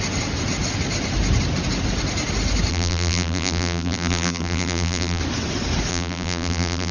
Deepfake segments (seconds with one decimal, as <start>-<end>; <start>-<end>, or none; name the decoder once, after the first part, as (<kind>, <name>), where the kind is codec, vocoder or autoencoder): 2.7-5.2 (vocoder, BigVGAN v2); 5.9-6.9